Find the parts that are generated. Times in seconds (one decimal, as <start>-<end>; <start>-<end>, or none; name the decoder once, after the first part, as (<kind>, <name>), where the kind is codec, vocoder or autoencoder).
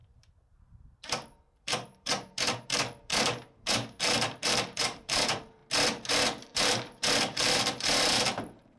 0.0-5.6 (vocoder, BigVGAN v2); 6.1-8.8